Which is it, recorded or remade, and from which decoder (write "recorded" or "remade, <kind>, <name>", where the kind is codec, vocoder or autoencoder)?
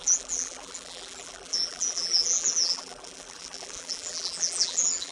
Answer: remade, vocoder, BigVGAN v2